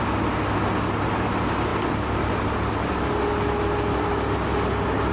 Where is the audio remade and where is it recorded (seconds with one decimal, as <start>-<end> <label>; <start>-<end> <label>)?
0.0-5.1 recorded